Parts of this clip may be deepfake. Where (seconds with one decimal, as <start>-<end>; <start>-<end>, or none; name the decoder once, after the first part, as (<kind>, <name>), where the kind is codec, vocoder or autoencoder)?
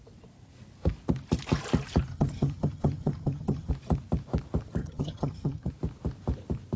2.1-3.7 (vocoder, HiFi-GAN); 4.8-5.7